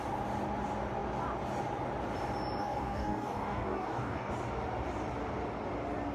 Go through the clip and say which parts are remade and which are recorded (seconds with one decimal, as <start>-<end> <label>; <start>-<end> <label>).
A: 0.0-2.6 recorded; 2.6-4.3 remade; 4.3-6.1 recorded